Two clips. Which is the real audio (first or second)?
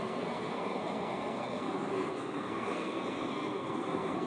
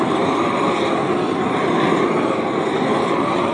second